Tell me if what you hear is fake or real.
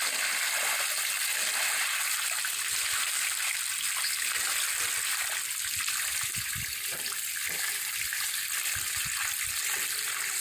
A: real